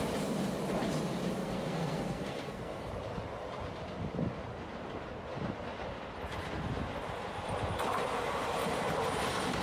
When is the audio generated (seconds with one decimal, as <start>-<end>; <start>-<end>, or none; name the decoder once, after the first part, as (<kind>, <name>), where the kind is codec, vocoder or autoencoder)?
1.4-2.9 (codec, SNAC)